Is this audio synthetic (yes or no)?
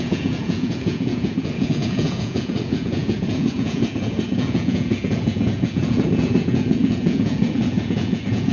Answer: yes